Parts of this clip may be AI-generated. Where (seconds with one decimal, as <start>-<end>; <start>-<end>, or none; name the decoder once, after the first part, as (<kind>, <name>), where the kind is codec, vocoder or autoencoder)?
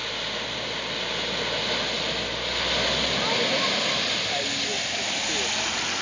none